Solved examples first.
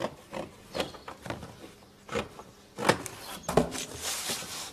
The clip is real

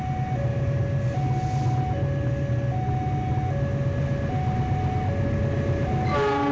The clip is real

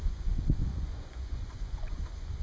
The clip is fake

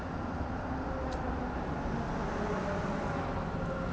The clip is real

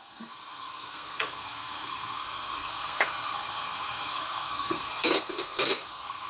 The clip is fake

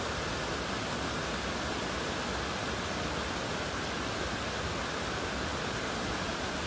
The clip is real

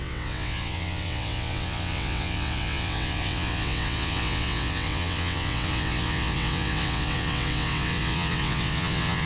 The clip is fake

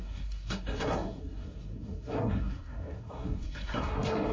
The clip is fake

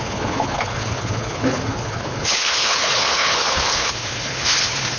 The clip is fake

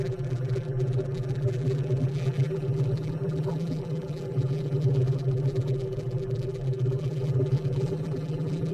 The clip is fake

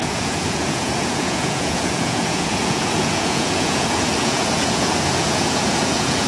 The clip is fake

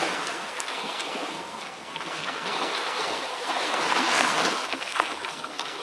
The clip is fake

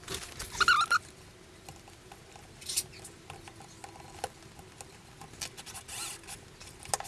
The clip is real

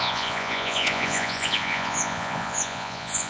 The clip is fake